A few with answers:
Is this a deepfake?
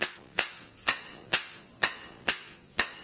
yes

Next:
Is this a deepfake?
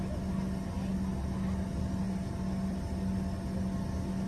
no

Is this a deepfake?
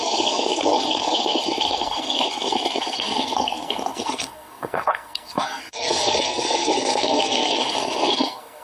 yes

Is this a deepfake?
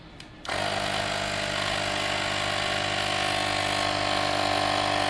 no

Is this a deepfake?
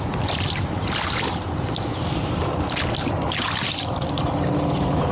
no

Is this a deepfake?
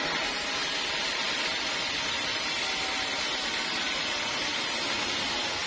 no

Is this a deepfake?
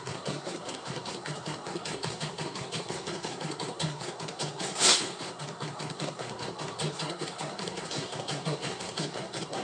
yes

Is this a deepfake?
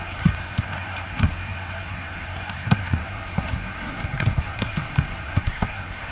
yes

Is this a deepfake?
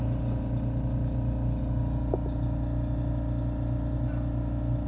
no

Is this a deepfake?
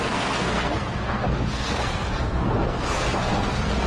yes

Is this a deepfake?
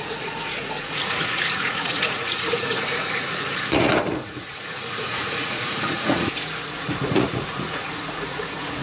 yes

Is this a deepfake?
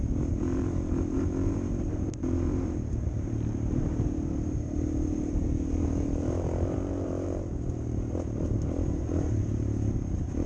yes